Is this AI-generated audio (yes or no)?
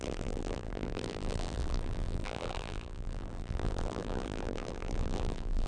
yes